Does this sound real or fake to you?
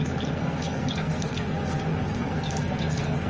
fake